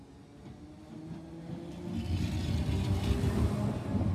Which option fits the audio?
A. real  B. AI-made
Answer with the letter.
A